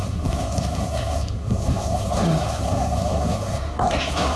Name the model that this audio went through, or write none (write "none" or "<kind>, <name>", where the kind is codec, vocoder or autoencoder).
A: codec, SNAC